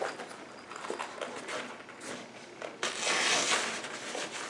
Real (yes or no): yes